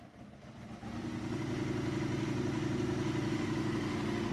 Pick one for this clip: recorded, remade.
recorded